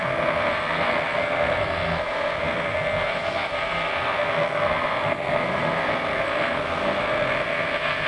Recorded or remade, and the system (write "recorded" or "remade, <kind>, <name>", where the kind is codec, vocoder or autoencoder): remade, codec, SNAC